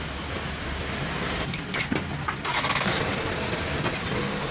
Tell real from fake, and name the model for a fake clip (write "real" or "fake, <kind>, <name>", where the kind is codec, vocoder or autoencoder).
real